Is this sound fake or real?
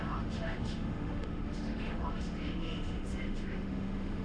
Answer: fake